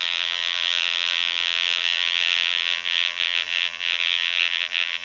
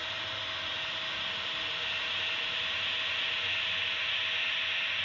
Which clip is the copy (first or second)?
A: first